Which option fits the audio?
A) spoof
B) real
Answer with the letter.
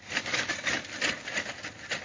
B